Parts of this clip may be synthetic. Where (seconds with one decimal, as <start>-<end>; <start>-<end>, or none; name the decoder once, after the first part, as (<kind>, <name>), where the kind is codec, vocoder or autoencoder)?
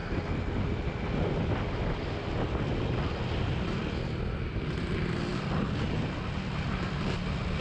none